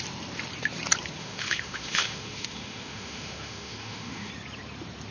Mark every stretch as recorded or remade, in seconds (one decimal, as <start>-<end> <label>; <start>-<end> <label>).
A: 0.0-1.2 recorded; 1.2-4.3 remade; 4.3-5.1 recorded

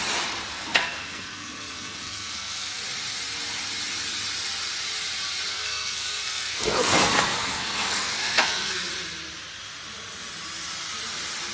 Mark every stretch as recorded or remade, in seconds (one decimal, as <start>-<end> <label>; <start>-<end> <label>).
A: 0.0-0.5 recorded; 0.5-2.8 remade; 2.8-5.5 recorded; 5.5-8.9 remade; 8.9-11.5 recorded

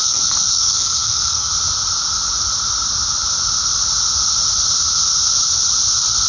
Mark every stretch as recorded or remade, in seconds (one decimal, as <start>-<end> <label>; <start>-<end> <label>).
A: 0.0-1.5 remade; 1.5-6.3 recorded

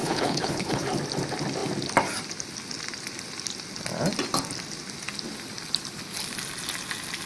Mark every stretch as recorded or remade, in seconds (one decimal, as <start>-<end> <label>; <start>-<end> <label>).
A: 0.0-0.9 remade; 0.9-7.3 recorded

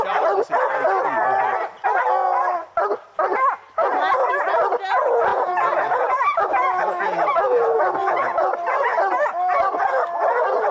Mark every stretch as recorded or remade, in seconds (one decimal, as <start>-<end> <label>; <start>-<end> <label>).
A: 0.0-5.3 recorded; 5.3-6.4 remade; 6.4-8.0 recorded; 8.0-8.5 remade; 8.5-10.7 recorded

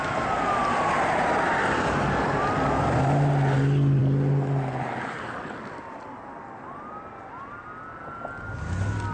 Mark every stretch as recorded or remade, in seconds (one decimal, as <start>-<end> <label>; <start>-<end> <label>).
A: 0.0-9.1 recorded

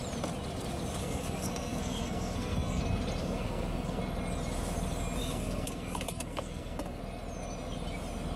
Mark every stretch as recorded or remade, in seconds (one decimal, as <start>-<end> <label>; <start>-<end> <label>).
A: 0.0-1.0 recorded; 1.0-2.8 remade; 2.8-3.2 recorded; 3.2-4.0 remade; 4.0-5.2 recorded; 5.2-7.0 remade; 7.0-8.4 recorded